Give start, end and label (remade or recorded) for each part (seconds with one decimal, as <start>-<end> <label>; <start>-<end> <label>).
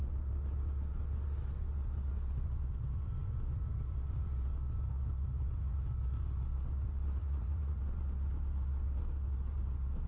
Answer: 0.0-7.2 recorded; 7.2-7.8 remade; 7.8-10.1 recorded